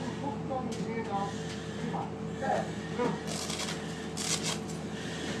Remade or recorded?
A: recorded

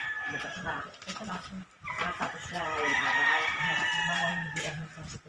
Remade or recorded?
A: remade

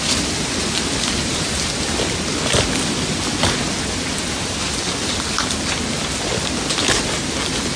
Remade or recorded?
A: recorded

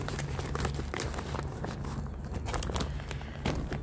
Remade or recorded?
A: recorded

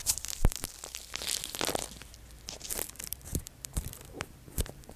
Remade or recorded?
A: remade